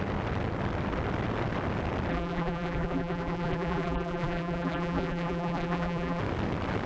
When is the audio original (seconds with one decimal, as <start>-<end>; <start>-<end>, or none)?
0.0-2.1; 6.2-6.9